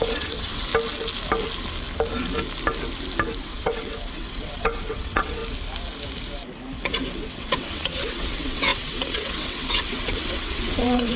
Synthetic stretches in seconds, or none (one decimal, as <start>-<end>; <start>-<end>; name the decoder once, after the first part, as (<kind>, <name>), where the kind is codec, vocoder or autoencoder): 0.0-0.7 (vocoder, WaveNeXt); 3.4-5.4; 7.2-11.2